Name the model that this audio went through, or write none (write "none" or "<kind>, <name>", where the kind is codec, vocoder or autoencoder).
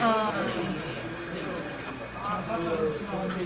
none